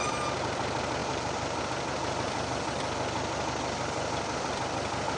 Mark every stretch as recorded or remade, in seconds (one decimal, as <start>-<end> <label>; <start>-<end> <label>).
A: 0.0-1.0 recorded; 1.0-1.6 remade; 1.6-5.2 recorded